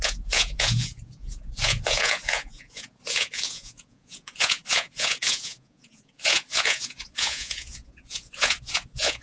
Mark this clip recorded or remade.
remade